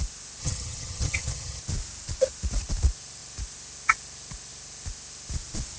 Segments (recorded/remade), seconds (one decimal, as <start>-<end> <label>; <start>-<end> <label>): 0.0-0.4 recorded; 0.4-1.6 remade; 1.6-5.8 recorded